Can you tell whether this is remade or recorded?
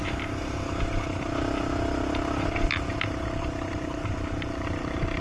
recorded